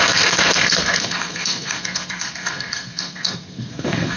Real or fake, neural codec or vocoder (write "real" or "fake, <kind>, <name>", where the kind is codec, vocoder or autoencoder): fake, codec, SNAC